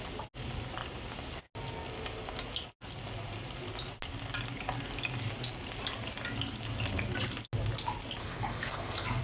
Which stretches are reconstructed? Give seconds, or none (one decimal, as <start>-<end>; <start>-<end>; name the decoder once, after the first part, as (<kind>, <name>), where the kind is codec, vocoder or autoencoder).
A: 8.2-9.2 (codec, SNAC)